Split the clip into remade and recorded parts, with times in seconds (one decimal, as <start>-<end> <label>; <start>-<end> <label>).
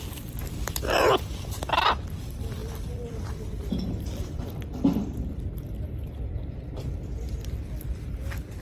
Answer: 0.0-8.6 remade